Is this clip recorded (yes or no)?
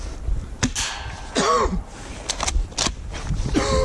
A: yes